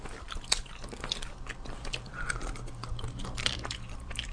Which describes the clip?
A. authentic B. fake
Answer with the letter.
B